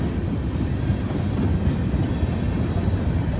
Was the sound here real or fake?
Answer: real